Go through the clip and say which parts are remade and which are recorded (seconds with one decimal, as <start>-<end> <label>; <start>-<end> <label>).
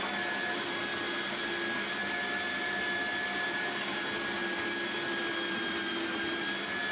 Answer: 0.0-6.9 recorded